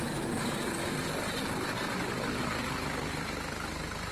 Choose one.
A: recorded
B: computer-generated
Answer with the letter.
A